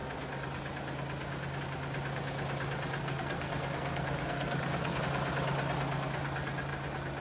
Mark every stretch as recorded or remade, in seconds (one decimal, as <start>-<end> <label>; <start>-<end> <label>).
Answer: 0.0-3.0 recorded; 3.0-5.0 remade; 5.0-7.2 recorded